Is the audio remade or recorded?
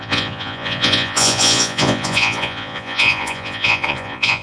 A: remade